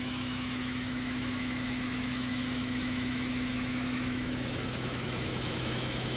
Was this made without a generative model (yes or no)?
no